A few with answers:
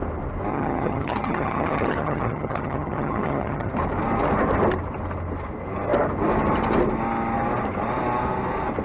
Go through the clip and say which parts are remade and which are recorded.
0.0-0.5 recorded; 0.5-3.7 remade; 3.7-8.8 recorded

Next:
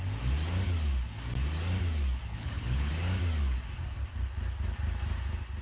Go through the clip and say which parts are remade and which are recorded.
0.0-2.3 recorded; 2.3-2.9 remade; 2.9-5.6 recorded

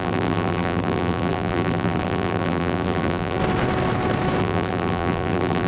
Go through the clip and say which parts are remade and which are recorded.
0.0-3.4 remade; 3.4-4.4 recorded; 4.4-5.7 remade